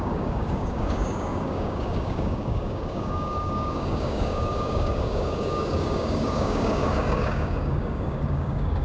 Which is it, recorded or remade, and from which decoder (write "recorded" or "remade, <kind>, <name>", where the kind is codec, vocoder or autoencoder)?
remade, codec, DAC